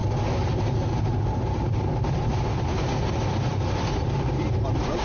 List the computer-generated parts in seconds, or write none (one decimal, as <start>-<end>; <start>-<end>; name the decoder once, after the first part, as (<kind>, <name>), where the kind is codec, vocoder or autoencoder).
3.5-4.3 (vocoder, BigVGAN v2)